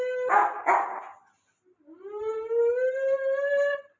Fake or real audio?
real